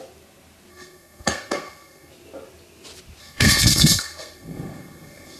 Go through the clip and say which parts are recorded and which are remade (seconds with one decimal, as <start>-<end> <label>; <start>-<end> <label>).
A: 0.0-0.7 recorded; 0.7-2.1 remade; 2.1-3.2 recorded; 3.2-5.4 remade